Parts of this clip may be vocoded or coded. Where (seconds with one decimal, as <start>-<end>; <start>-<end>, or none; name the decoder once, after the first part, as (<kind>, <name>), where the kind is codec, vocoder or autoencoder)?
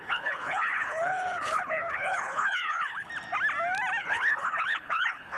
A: 0.0-3.1 (codec, HILCodec); 4.0-5.4